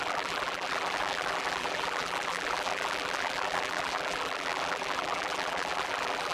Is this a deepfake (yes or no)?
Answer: yes